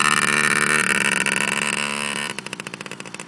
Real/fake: real